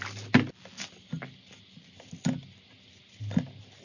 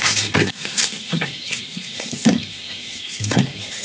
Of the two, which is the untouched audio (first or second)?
first